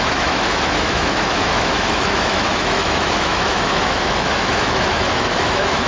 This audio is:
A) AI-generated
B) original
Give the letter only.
A